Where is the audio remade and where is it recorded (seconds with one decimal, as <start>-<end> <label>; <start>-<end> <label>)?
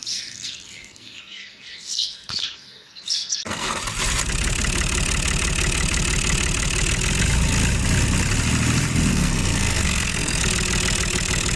0.0-3.8 remade; 3.8-9.1 recorded; 9.1-10.4 remade; 10.4-11.6 recorded